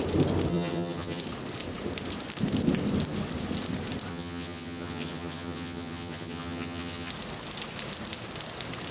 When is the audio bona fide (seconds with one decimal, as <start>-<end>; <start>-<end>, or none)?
0.0-0.5; 1.2-4.1; 7.1-8.9